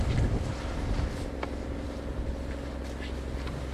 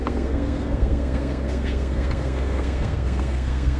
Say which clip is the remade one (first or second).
second